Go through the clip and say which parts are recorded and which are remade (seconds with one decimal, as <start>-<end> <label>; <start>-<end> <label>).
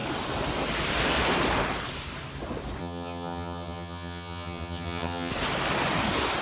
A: 0.0-2.8 recorded; 2.8-5.3 remade; 5.3-6.4 recorded